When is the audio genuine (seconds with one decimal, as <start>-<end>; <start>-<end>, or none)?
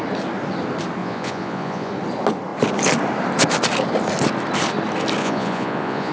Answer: 0.0-1.0; 1.9-5.2